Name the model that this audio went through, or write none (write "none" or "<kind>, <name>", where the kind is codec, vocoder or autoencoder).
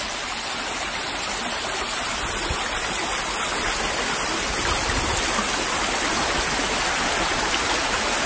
none